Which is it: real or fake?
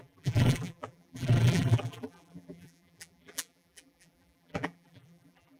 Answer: fake